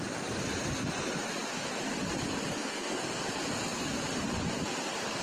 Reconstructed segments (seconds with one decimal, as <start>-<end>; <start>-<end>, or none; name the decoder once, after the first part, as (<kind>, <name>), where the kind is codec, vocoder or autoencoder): 2.5-3.2 (codec, SNAC)